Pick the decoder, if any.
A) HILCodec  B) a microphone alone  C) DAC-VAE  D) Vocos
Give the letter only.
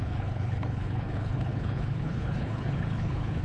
A